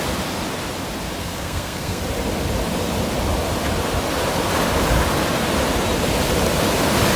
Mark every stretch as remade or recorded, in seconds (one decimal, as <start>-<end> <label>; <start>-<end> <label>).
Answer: 0.0-1.2 recorded; 1.2-2.0 remade; 2.0-7.2 recorded